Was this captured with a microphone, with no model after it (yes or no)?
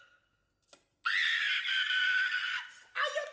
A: yes